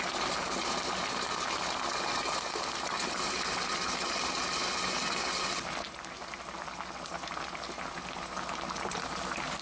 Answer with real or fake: real